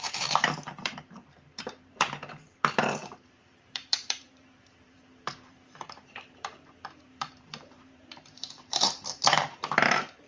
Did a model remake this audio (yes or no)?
yes